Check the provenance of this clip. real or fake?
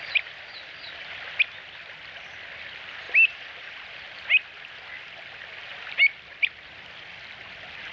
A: real